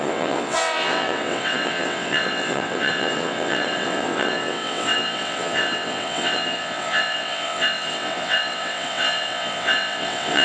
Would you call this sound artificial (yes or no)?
yes